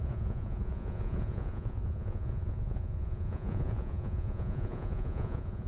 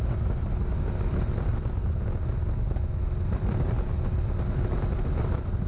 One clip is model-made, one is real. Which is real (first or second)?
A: second